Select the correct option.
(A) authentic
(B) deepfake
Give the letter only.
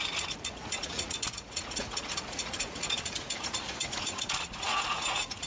B